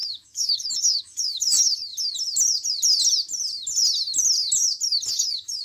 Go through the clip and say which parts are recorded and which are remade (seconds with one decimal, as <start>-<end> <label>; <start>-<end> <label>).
0.0-1.9 remade; 1.9-5.1 recorded; 5.1-5.6 remade